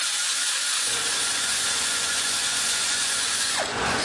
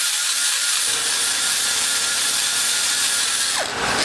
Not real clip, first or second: first